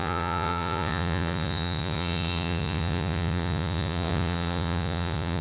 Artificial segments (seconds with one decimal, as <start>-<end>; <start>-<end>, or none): 0.0-5.4

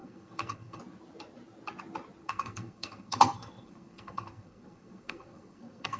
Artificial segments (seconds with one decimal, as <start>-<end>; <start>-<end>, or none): 0.0-0.8; 2.2-6.0

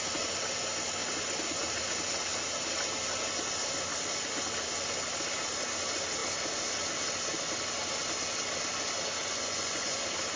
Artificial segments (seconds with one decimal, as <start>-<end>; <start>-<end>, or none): 9.2-10.0

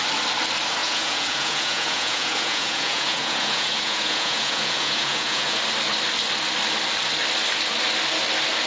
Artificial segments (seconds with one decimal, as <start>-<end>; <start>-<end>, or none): 0.8-5.6